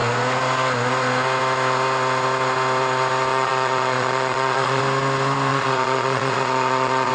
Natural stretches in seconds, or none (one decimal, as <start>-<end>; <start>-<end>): 0.0-3.3; 4.8-5.5